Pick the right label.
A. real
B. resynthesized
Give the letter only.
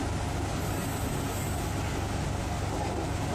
A